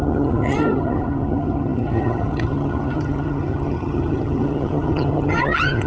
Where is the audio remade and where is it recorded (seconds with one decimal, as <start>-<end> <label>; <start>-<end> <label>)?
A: 0.0-5.9 remade